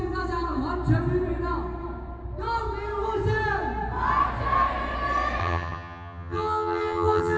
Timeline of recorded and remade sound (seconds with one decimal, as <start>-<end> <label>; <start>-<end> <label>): 0.0-5.4 recorded; 5.4-7.4 remade